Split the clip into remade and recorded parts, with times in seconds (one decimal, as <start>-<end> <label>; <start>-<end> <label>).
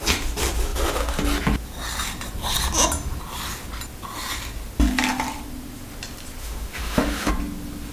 0.0-6.4 recorded; 6.4-7.3 remade; 7.3-7.9 recorded